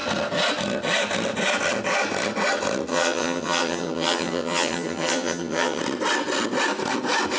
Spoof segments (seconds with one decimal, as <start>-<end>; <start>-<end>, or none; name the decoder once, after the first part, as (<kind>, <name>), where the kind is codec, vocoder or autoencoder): 2.9-5.8 (vocoder, HiFi-GAN)